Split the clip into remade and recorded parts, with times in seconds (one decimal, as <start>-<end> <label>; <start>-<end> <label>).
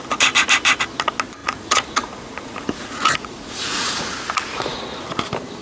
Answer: 0.0-1.4 recorded; 1.4-4.8 remade; 4.8-5.6 recorded